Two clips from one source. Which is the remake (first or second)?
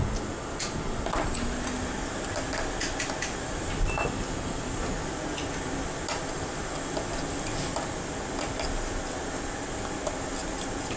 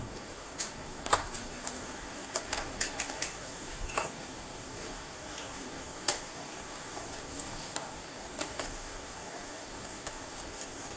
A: second